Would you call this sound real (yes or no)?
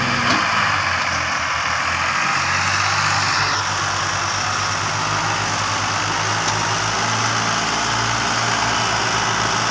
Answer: yes